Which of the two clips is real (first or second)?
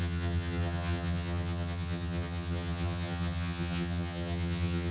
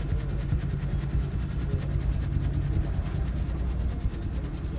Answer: second